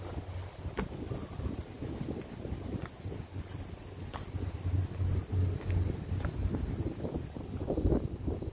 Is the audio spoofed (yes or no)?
no